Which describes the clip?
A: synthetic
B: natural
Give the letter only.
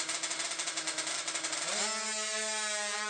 B